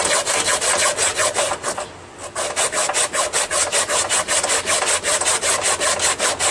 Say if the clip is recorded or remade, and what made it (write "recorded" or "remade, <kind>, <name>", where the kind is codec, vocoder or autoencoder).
recorded